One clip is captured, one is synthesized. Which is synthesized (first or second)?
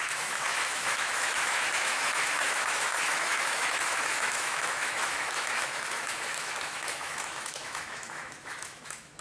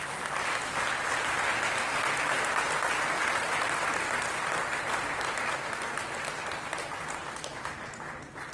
first